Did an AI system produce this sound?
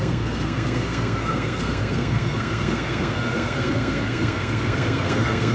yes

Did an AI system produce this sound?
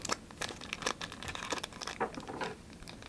no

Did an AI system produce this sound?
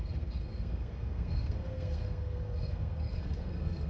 yes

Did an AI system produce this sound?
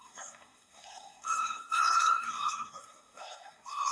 yes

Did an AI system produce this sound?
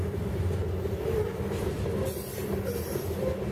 no